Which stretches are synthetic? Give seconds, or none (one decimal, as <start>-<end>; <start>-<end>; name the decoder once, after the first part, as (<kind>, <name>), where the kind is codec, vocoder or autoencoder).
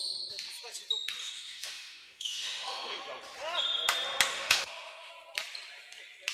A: 1.2-3.0 (autoencoder, DAC-VAE); 4.3-5.1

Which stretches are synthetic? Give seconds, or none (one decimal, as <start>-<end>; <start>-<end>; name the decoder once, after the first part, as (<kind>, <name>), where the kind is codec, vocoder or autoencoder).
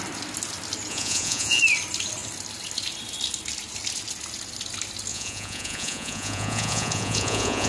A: 0.9-1.6 (vocoder, Vocos); 5.1-7.7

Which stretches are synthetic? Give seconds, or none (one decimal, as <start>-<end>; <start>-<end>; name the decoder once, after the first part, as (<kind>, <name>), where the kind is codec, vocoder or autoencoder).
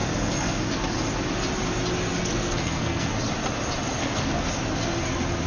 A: 0.0-0.6 (codec, SNAC); 2.2-3.1; 4.0-4.5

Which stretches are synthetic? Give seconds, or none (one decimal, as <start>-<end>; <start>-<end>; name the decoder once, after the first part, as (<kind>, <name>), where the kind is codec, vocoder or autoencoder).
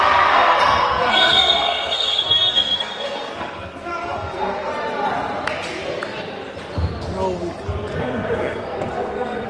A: 0.0-4.7 (codec, SNAC); 8.0-9.5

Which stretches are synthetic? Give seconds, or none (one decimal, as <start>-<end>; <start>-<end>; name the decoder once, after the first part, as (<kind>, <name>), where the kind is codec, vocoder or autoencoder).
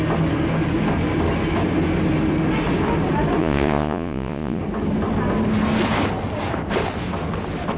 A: 3.4-4.6 (vocoder, Vocos)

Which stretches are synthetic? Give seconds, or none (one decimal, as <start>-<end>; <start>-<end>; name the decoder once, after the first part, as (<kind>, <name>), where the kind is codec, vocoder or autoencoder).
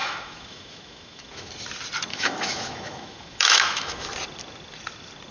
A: 0.0-1.5 (autoencoder, DAC-VAE); 2.1-4.1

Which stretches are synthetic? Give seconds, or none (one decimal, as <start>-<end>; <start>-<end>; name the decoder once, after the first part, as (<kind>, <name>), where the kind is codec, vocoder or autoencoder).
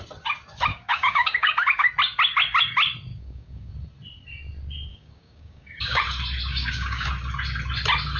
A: 0.7-1.9 (codec, DAC); 3.1-3.7; 4.9-6.0; 6.5-7.1